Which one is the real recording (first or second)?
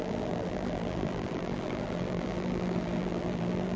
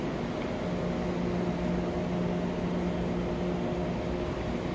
second